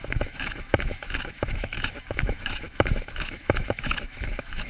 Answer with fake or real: fake